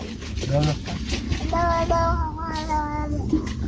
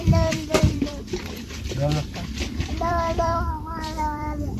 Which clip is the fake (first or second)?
second